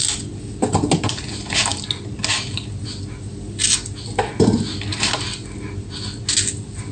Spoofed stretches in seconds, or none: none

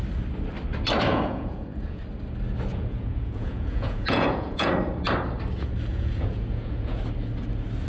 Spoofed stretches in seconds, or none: 1.1-2.0 (vocoder, Vocos); 2.7-4.7; 5.9-7.0